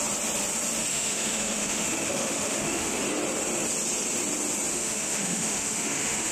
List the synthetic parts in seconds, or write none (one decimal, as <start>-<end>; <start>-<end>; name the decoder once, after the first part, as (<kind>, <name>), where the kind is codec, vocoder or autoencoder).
0.9-3.0 (autoencoder, DAC-VAE); 4.7-6.3